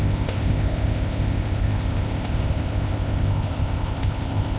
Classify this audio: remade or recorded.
remade